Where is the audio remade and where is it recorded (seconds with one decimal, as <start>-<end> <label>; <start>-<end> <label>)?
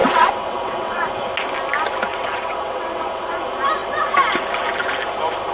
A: 0.0-1.1 remade; 1.1-2.1 recorded; 2.1-3.4 remade; 3.4-5.5 recorded